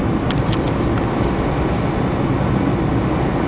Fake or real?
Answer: real